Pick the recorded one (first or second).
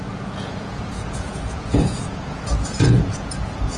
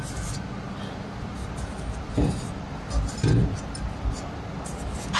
second